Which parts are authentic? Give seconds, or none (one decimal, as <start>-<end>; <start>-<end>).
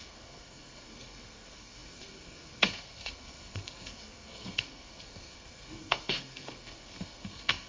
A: none